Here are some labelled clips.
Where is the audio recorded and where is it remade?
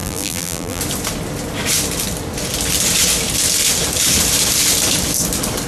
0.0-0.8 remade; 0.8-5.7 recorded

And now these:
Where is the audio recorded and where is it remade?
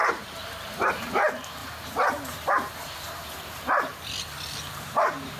0.0-1.6 remade; 1.6-4.8 recorded; 4.8-5.4 remade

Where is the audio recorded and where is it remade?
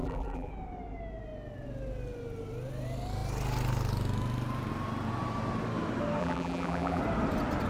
0.0-0.5 remade; 0.5-6.2 recorded; 6.2-7.0 remade; 7.0-7.7 recorded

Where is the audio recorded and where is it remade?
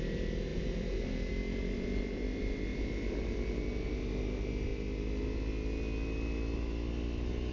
0.0-0.5 recorded; 0.5-1.3 remade; 1.3-2.7 recorded; 2.7-3.2 remade; 3.2-7.5 recorded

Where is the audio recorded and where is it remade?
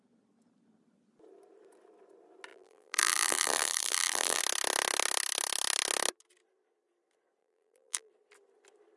0.0-2.5 recorded; 2.5-4.4 remade; 4.4-7.4 recorded; 7.4-8.1 remade; 8.1-9.0 recorded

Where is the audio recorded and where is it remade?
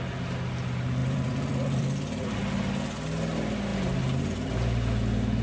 0.0-1.0 recorded; 1.0-2.3 remade; 2.3-5.4 recorded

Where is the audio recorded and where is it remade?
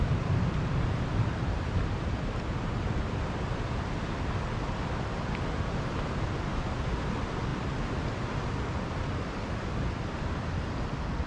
0.0-11.3 remade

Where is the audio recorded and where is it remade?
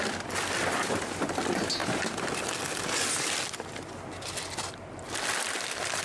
0.0-1.8 recorded; 1.8-2.5 remade; 2.5-6.0 recorded